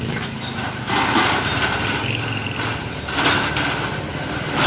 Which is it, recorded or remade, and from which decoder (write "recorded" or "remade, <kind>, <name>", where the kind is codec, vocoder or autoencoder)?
recorded